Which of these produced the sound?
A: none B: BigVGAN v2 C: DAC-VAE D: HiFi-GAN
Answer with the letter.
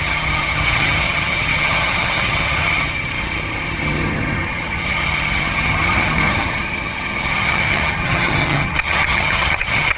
D